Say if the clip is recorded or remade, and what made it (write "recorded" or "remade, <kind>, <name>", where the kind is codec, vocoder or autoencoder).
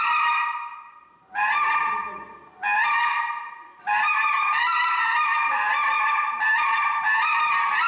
recorded